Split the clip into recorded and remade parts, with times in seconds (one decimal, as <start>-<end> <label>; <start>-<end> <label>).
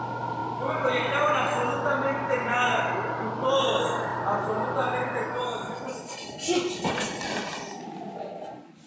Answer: 0.0-8.9 recorded